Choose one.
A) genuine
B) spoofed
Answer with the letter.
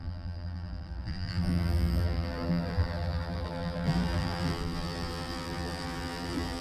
B